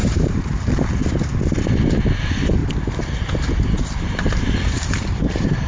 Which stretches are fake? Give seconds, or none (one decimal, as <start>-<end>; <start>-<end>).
0.0-2.6; 3.2-5.7